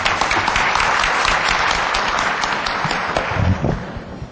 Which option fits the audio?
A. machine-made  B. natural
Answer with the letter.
B